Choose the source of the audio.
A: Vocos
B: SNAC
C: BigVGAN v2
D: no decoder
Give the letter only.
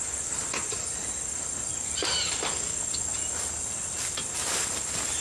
D